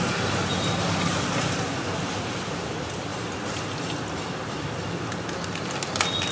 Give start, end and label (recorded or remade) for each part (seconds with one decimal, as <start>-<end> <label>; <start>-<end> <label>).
0.0-6.3 recorded